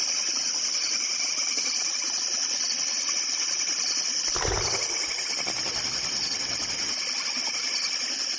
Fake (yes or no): no